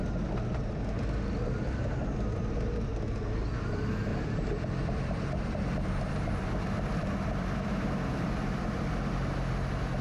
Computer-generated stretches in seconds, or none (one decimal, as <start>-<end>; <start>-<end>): 4.1-9.3